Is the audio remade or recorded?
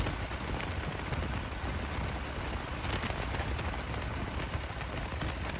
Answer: recorded